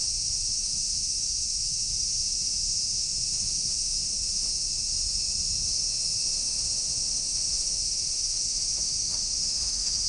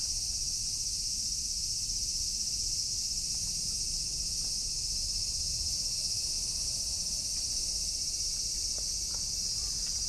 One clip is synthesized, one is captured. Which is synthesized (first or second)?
first